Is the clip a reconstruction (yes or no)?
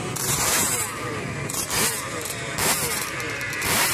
yes